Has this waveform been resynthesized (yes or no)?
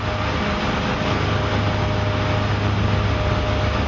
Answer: no